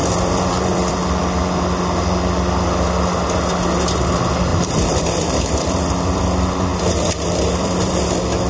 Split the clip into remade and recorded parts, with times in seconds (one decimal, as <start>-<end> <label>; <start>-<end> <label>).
0.0-1.0 remade; 1.0-4.5 recorded; 4.5-6.2 remade; 6.2-6.7 recorded; 6.7-8.0 remade; 8.0-8.5 recorded